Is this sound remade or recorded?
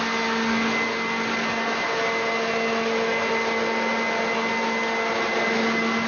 recorded